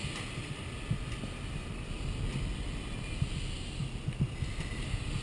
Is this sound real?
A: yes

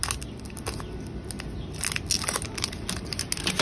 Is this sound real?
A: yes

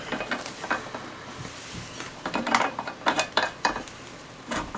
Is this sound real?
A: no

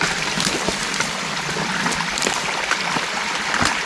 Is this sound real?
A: yes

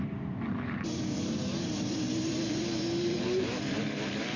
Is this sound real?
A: no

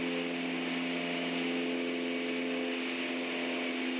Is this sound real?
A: yes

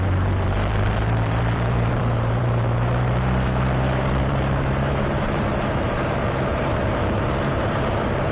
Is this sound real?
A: no